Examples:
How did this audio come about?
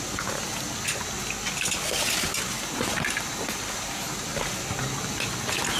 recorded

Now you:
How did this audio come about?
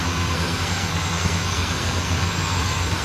remade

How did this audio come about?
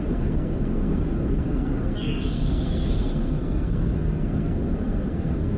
remade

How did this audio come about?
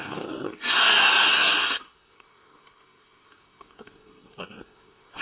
remade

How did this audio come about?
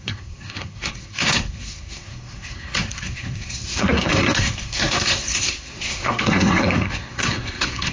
remade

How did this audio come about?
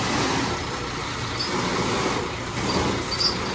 recorded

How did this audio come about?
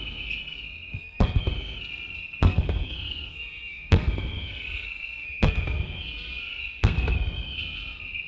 remade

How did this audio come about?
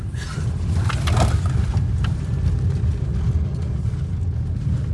recorded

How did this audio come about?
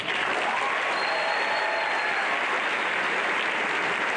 recorded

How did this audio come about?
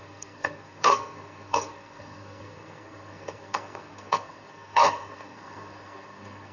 remade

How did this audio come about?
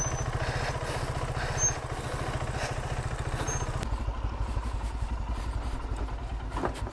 recorded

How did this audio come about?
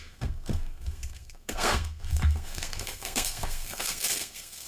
remade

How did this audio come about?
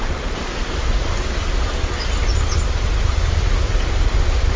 recorded